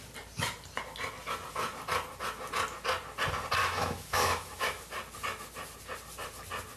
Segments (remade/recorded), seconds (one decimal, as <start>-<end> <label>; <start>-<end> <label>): 0.0-3.6 recorded; 3.6-4.8 remade; 4.8-6.8 recorded